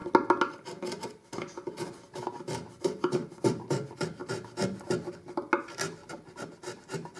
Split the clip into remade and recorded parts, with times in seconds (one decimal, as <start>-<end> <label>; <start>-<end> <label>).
0.0-7.2 recorded